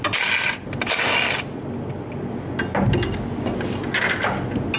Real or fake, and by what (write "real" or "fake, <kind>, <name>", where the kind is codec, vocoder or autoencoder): real